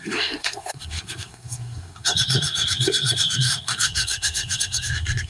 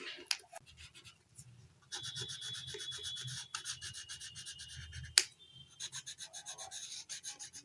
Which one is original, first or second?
second